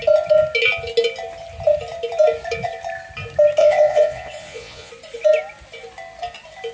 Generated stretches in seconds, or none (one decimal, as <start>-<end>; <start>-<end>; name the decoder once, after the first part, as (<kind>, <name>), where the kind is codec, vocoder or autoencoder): 3.6-4.9 (vocoder, Vocos)